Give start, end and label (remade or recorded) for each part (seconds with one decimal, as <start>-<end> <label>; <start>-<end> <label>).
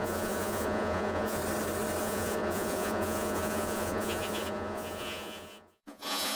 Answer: 0.0-1.4 remade; 1.4-2.0 recorded; 2.0-6.4 remade